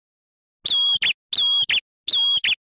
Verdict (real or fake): real